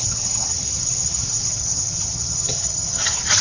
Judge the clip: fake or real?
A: fake